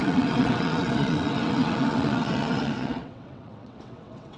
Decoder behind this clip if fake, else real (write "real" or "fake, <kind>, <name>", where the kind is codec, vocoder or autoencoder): fake, vocoder, WaveNeXt